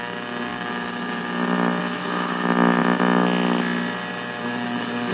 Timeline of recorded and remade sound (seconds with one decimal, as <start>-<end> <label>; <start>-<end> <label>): 0.0-0.5 recorded; 0.5-1.8 remade; 1.8-5.1 recorded